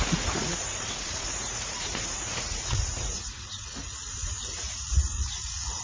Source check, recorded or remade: remade